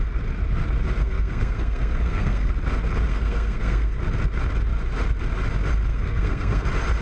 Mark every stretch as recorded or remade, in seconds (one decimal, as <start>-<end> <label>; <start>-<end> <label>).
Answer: 0.0-1.0 recorded; 1.0-2.5 remade; 2.5-3.1 recorded; 3.1-4.0 remade; 4.0-5.9 recorded; 5.9-6.6 remade; 6.6-7.0 recorded